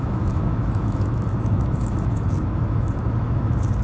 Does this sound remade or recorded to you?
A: remade